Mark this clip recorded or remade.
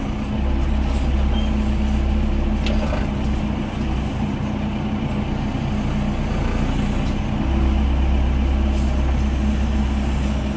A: recorded